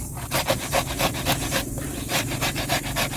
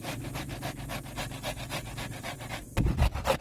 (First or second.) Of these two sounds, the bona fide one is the second